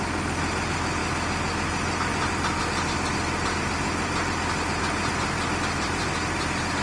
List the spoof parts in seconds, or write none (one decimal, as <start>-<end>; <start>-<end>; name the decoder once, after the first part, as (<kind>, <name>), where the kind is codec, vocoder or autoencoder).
none